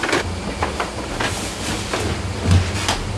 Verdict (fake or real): real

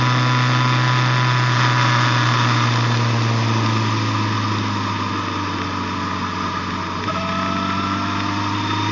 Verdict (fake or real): real